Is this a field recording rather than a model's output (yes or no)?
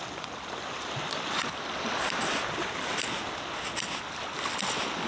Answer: yes